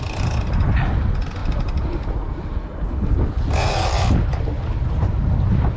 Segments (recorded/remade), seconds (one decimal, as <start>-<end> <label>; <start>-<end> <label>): 0.0-5.8 recorded